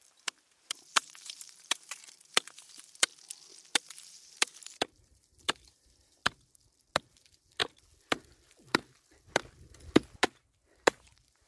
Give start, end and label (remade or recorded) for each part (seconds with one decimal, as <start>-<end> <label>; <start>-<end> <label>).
0.0-3.1 remade; 3.1-3.8 recorded; 3.8-6.2 remade; 6.2-7.0 recorded; 7.0-7.6 remade; 7.6-10.9 recorded; 10.9-11.5 remade